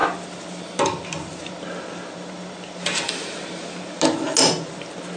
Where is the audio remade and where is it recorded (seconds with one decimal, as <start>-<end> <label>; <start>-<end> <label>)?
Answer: 0.0-5.2 recorded